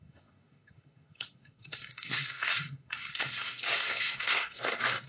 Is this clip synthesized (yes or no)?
yes